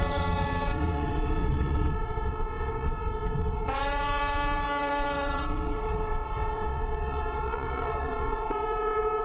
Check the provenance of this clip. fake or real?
fake